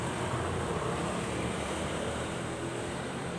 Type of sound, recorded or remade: remade